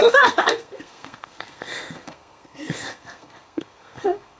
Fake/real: fake